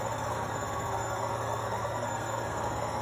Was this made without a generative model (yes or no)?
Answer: no